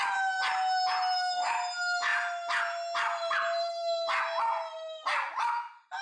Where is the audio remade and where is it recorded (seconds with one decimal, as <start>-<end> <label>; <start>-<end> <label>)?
0.0-6.0 recorded